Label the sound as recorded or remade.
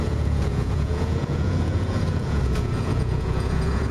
remade